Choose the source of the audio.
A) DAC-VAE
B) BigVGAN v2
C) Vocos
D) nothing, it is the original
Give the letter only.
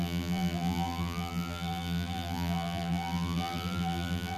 B